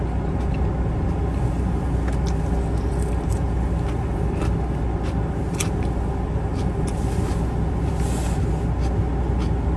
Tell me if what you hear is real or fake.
real